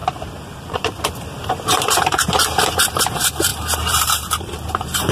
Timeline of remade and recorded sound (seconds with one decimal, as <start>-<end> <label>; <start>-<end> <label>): 0.0-5.1 remade